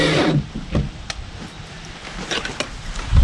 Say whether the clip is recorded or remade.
recorded